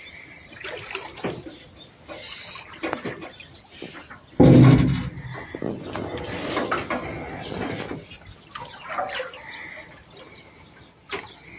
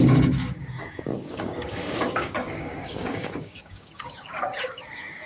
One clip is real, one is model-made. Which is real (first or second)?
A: first